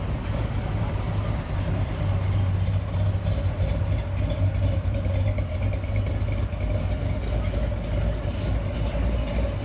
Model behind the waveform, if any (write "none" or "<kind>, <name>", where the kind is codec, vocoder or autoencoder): none